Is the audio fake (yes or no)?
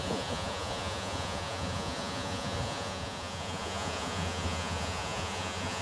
yes